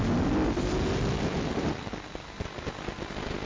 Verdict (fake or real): real